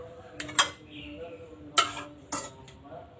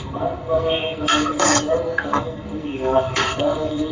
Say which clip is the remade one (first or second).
second